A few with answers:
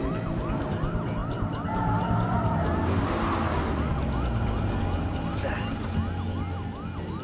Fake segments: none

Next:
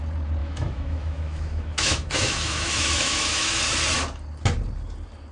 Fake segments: 0.4-3.6 (autoencoder, DAC-VAE)

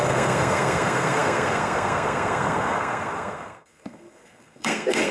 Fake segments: 0.0-5.1 (codec, SNAC)